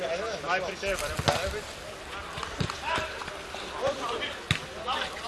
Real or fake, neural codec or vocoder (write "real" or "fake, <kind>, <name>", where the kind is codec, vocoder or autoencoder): real